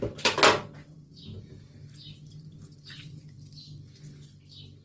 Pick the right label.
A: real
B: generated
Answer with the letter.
A